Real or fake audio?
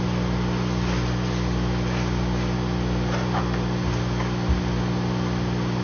real